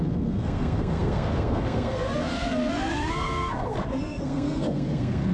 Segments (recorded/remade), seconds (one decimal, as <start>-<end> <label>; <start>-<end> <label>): 0.0-5.3 remade